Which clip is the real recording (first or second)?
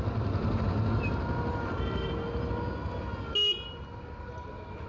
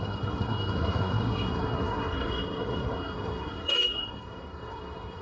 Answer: first